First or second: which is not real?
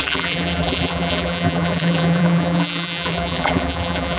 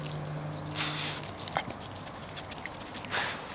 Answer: first